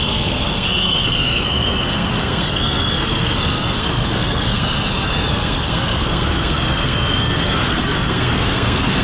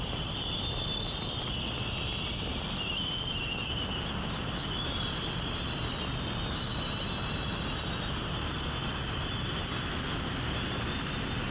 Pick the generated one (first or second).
first